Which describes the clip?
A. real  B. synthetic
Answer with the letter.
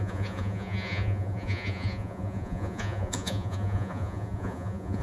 B